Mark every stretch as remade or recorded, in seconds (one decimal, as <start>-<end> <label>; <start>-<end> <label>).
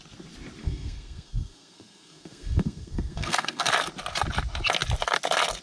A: 0.0-0.6 recorded; 0.6-3.7 remade; 3.7-5.6 recorded